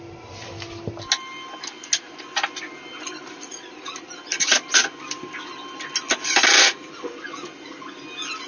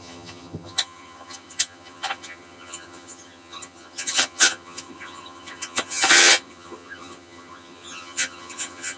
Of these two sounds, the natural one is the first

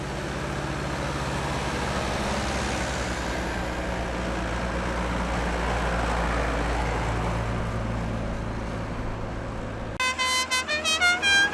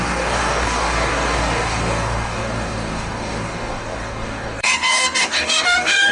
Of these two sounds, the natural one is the first